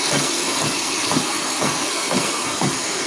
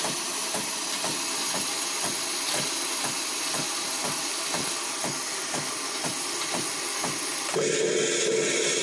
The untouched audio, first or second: second